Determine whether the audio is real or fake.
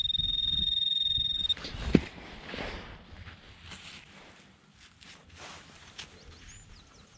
real